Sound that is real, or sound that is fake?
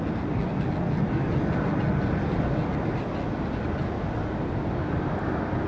real